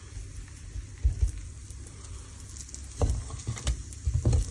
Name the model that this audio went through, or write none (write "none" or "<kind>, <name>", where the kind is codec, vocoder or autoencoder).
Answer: none